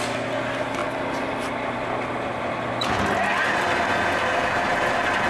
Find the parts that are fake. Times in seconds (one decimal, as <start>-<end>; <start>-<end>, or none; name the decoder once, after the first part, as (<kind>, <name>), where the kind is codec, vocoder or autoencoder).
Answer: none